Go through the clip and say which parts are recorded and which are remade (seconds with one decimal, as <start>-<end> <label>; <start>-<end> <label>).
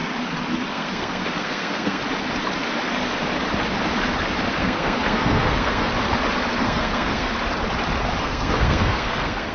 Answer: 0.0-0.7 recorded; 0.7-2.0 remade; 2.0-4.6 recorded; 4.6-5.9 remade; 5.9-6.6 recorded; 6.6-7.3 remade; 7.3-8.2 recorded; 8.2-9.5 remade